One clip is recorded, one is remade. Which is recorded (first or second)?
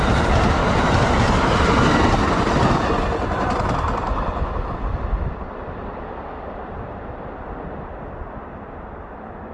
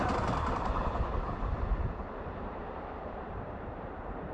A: first